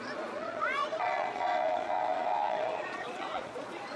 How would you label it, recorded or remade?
remade